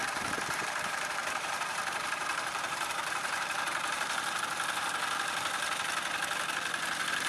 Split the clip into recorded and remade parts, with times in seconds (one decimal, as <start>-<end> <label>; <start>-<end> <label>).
0.0-4.4 remade; 4.4-7.3 recorded